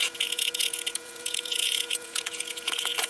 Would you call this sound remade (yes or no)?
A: yes